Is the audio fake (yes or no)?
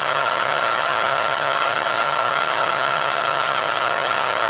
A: yes